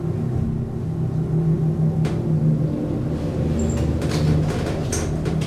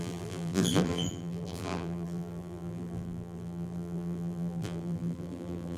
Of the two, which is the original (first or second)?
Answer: first